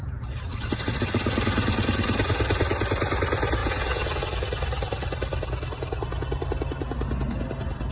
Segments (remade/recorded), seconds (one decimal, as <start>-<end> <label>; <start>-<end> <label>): 0.0-3.6 recorded; 3.6-4.2 remade; 4.2-7.9 recorded